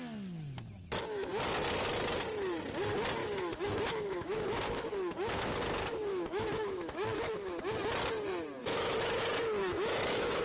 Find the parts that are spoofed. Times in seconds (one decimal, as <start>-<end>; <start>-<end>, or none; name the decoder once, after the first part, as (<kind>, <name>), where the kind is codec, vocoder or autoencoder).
3.2-4.9 (autoencoder, DAC-VAE); 6.1-7.6; 8.6-9.2; 9.6-10.4